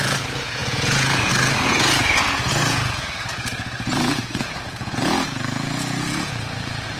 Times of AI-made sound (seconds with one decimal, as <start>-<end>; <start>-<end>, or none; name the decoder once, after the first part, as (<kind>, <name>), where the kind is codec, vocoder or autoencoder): 0.0-7.0 (vocoder, Vocos)